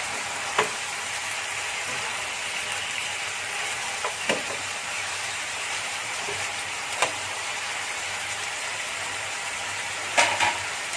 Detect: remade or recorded remade